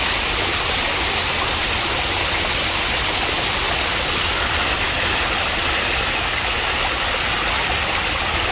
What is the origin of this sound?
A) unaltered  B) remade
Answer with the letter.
A